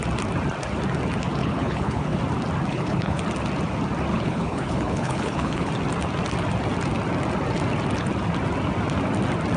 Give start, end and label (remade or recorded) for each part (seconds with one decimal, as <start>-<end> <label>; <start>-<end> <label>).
0.0-1.4 recorded; 1.4-2.2 remade; 2.2-2.7 recorded; 2.7-3.2 remade; 3.2-4.1 recorded; 4.1-5.7 remade; 5.7-9.6 recorded